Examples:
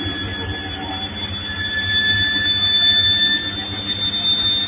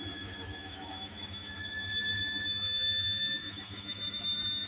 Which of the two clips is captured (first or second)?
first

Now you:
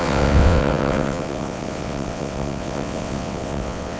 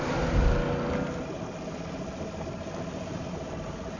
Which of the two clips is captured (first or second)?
second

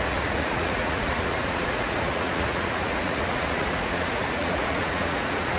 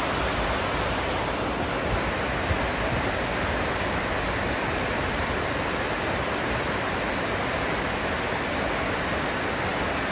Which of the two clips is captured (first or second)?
second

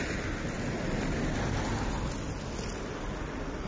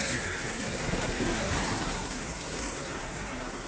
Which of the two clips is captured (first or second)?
first